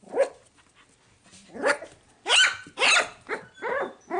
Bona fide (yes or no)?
yes